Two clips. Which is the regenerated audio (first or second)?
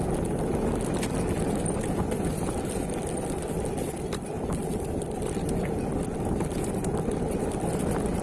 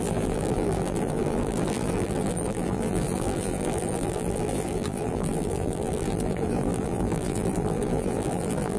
second